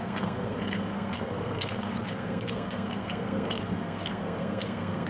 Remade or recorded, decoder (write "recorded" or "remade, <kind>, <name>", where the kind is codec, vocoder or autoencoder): remade, codec, SNAC